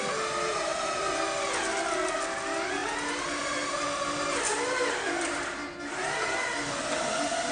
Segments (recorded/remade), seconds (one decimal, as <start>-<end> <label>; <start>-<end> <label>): 0.0-7.5 recorded

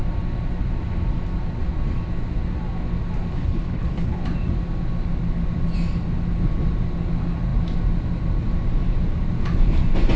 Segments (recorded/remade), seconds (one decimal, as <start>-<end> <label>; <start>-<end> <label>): 0.0-3.3 recorded; 3.3-4.2 remade; 4.2-10.2 recorded